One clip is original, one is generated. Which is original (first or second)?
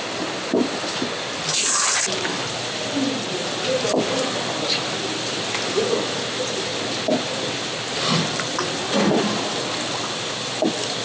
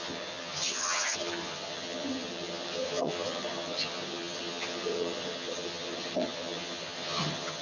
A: first